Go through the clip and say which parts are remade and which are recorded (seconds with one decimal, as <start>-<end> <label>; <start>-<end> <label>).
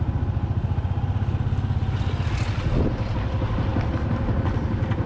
0.0-5.1 recorded